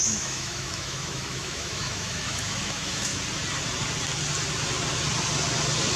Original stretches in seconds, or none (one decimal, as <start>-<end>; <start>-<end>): 3.1-6.0